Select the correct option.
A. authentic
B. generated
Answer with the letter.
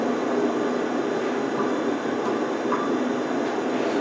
A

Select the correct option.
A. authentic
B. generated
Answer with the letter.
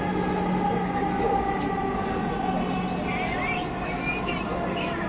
A